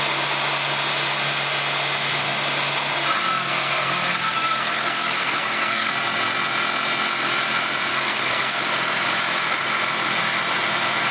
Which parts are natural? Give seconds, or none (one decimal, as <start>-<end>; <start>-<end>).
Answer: 0.0-3.3; 5.9-7.9; 8.6-11.1